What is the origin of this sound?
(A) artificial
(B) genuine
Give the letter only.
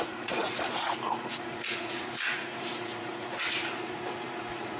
A